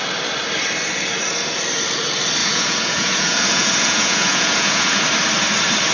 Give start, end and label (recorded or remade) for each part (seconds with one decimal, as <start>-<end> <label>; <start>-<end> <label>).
0.0-2.4 recorded; 2.4-5.0 remade; 5.0-5.9 recorded